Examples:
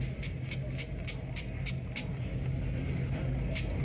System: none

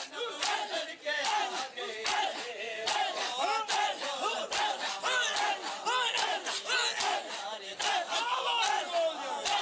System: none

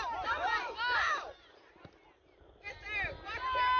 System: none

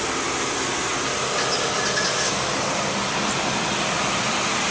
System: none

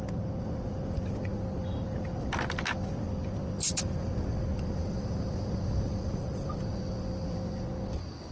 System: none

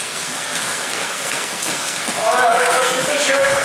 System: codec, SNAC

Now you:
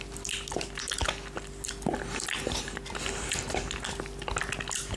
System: none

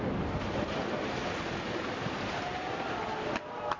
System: none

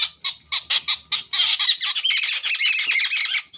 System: none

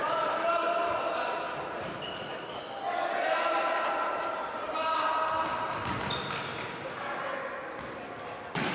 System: none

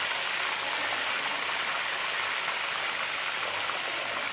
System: none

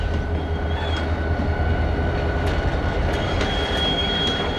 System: none